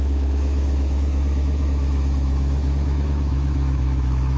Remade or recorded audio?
remade